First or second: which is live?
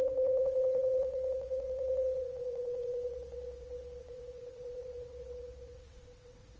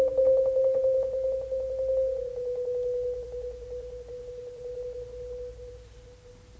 second